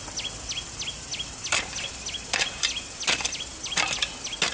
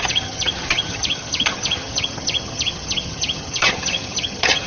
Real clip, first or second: first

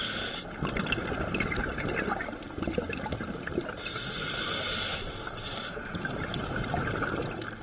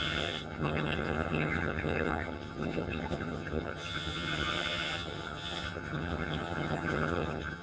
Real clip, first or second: first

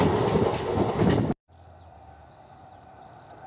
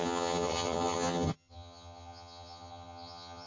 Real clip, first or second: first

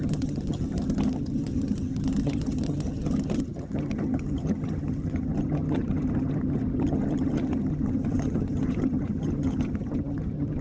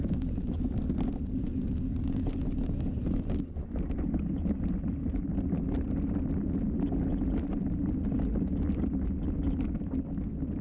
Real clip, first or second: second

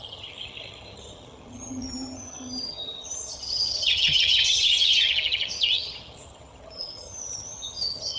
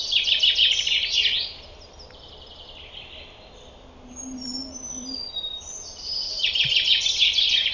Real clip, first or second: second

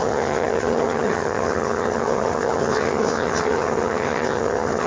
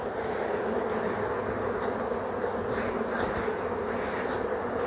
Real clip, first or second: second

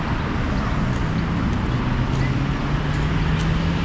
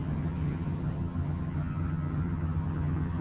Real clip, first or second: first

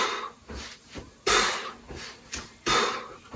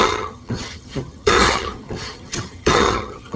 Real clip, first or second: first